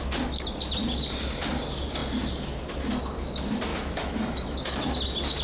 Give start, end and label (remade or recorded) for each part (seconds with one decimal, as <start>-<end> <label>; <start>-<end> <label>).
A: 0.0-3.7 recorded; 3.7-5.0 remade; 5.0-5.4 recorded